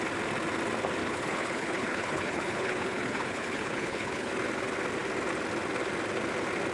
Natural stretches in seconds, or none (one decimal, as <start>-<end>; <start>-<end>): 0.0-1.0; 4.3-6.7